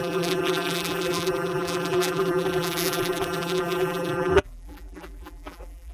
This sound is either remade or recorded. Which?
remade